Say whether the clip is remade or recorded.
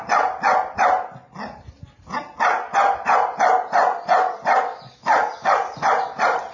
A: recorded